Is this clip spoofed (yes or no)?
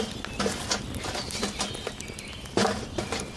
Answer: no